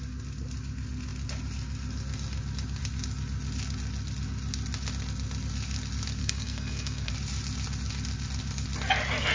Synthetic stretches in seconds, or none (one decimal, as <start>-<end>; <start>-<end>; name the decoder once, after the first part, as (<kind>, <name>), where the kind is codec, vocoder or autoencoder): 6.2-7.1 (codec, SNAC)